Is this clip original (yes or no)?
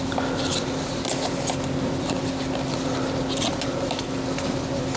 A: yes